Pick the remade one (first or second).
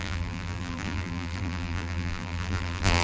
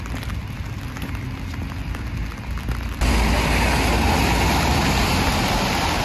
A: first